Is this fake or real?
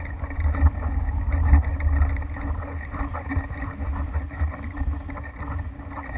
real